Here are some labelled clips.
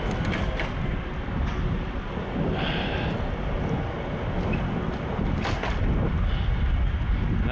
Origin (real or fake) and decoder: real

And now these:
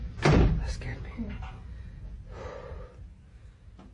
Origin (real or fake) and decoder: real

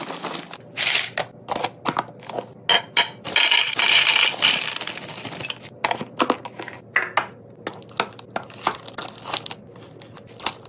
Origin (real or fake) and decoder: real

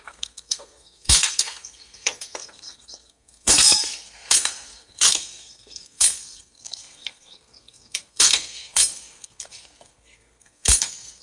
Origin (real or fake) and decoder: fake, codec, SNAC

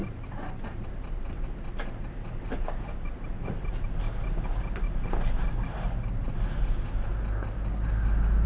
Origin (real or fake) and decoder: real